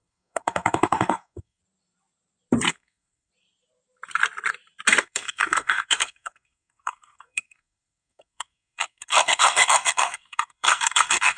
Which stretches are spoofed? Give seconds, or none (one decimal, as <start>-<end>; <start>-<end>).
0.0-1.6; 2.7-3.3; 5.0-11.4